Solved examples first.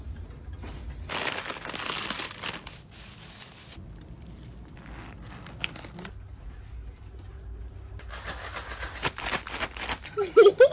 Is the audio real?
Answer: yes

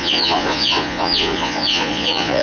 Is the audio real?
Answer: no